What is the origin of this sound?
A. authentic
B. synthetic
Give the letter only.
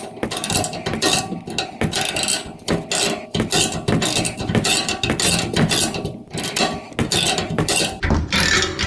A